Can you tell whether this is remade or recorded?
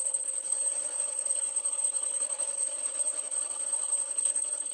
remade